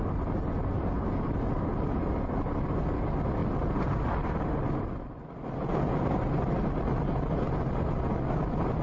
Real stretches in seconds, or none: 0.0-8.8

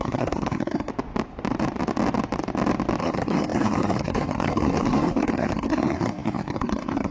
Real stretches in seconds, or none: 0.9-3.0

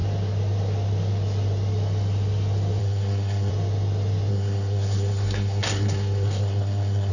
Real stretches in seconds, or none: 0.0-2.8; 3.5-4.3

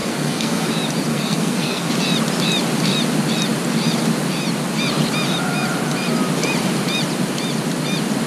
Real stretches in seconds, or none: 0.7-1.1; 1.9-8.3